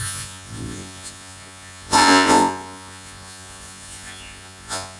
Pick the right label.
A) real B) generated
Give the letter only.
B